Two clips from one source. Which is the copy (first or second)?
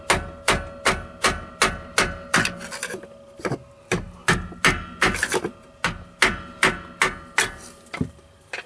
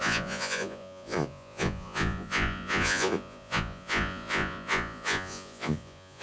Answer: second